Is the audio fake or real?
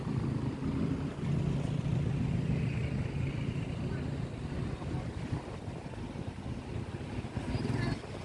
real